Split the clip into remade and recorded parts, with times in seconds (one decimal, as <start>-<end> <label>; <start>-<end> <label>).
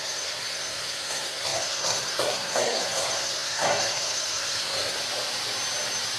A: 0.0-5.0 remade; 5.0-6.2 recorded